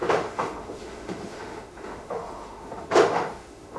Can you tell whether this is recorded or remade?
remade